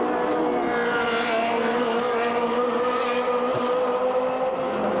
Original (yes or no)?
yes